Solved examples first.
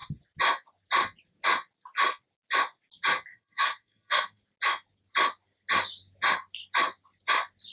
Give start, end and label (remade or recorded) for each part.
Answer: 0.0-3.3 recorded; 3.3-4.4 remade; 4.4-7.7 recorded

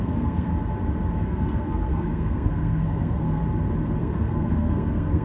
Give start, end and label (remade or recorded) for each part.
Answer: 0.0-0.5 remade; 0.5-1.1 recorded; 1.1-3.4 remade; 3.4-4.0 recorded; 4.0-5.2 remade

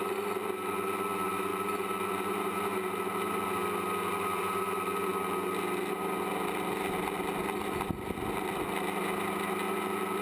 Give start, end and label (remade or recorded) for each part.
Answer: 0.0-10.2 recorded

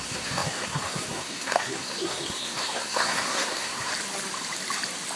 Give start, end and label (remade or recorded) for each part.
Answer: 0.0-3.9 remade; 3.9-5.2 recorded

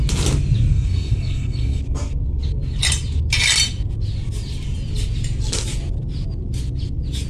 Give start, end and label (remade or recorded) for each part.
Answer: 0.0-0.7 recorded; 0.7-1.8 remade; 1.8-7.3 recorded

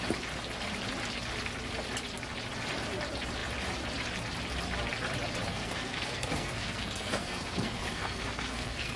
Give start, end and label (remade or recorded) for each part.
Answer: 0.0-5.5 recorded; 5.5-9.0 remade